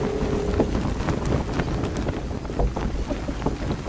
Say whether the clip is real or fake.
real